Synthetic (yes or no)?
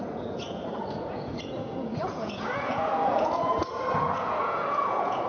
yes